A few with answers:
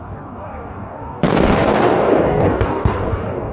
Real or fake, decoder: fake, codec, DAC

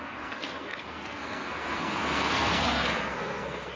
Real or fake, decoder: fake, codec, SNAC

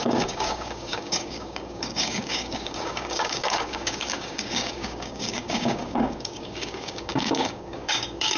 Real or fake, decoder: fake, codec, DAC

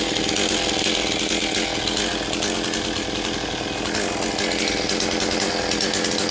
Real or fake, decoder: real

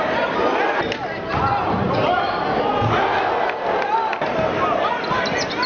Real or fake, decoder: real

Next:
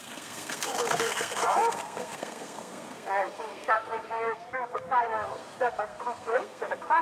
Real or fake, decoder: fake, codec, SNAC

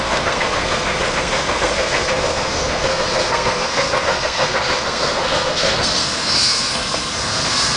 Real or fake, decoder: fake, codec, SNAC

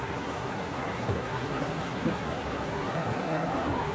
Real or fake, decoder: fake, codec, SNAC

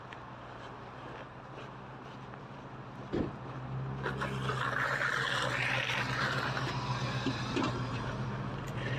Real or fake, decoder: real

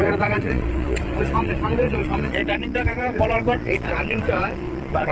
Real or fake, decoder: fake, vocoder, Vocos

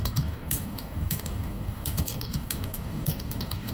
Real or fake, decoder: fake, codec, DAC